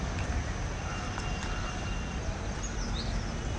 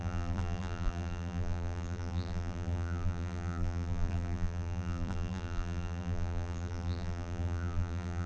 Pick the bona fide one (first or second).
first